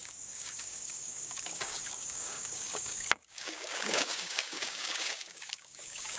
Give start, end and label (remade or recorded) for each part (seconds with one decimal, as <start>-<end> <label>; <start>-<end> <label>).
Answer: 0.0-6.2 remade